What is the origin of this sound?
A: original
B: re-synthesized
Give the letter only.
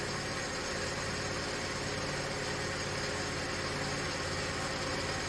A